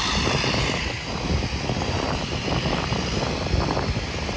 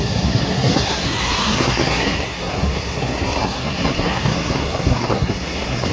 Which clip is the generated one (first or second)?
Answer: second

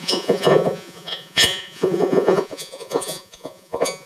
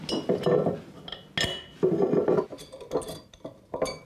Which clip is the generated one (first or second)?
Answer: first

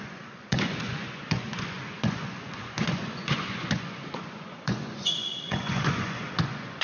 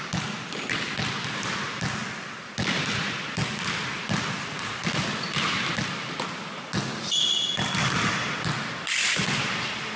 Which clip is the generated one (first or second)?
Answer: first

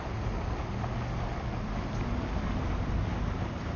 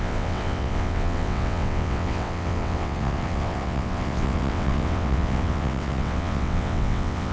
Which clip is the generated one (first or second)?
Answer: second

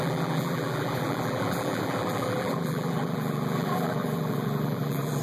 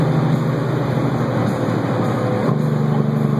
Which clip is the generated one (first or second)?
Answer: first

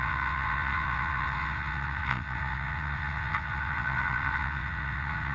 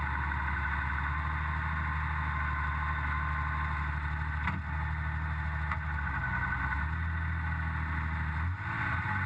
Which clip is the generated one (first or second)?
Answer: first